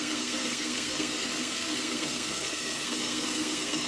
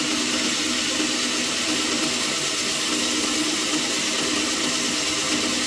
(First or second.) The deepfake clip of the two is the first